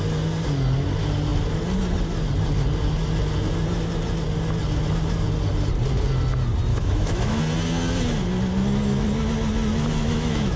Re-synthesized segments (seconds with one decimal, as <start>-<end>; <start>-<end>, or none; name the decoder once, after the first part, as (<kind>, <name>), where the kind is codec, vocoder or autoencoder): 6.7-7.4 (autoencoder, DAC-VAE); 10.0-10.6